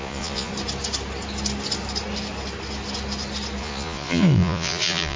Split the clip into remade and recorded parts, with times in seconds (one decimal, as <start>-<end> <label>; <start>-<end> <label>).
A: 0.0-0.5 remade; 0.5-3.6 recorded; 3.6-5.2 remade